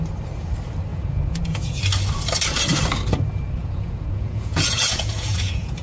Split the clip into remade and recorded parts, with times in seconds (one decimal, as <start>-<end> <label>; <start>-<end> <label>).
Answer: 0.0-0.9 recorded; 0.9-1.8 remade; 1.8-3.6 recorded; 3.6-5.8 remade